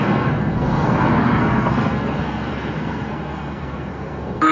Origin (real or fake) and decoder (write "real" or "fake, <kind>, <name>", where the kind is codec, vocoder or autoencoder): fake, codec, SNAC